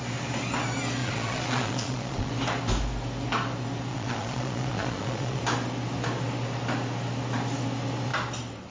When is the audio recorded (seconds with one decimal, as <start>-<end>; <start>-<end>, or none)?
0.0-1.0; 2.3-3.9; 5.4-8.7